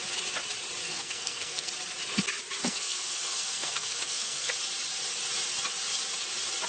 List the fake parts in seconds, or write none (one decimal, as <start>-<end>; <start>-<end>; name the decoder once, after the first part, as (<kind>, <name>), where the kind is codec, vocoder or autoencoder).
0.8-1.7 (codec, SNAC); 2.6-4.5